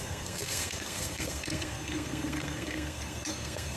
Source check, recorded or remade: remade